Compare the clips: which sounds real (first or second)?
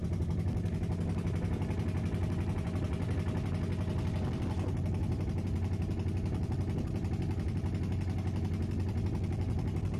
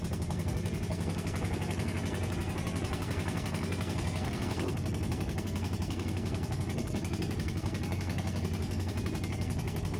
first